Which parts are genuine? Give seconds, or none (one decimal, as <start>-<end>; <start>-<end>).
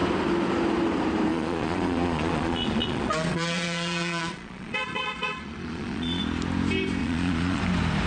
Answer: 0.0-1.3; 6.2-7.0; 7.6-8.1